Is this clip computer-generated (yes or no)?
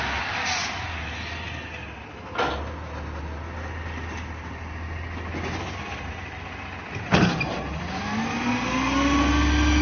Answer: no